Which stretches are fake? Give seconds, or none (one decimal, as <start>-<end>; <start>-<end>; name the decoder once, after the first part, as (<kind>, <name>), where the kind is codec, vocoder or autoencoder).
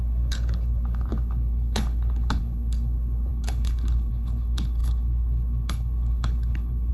0.0-6.9 (codec, HILCodec)